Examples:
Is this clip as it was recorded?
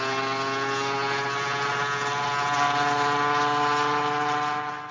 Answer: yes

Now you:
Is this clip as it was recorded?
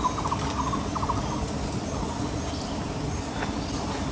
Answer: yes